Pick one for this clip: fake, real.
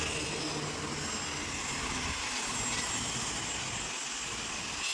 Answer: real